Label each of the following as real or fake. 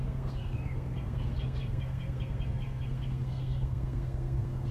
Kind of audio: fake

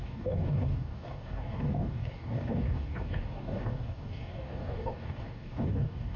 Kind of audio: fake